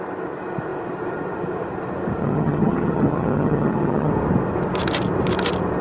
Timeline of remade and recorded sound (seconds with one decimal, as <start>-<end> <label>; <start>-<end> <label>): 0.0-2.2 recorded; 2.2-4.1 remade; 4.1-5.8 recorded